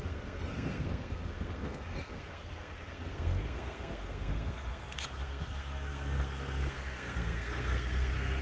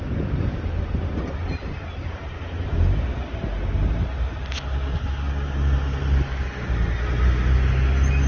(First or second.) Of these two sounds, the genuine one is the second